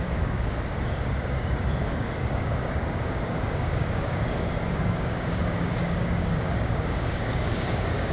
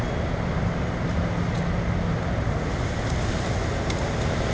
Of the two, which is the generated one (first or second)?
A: first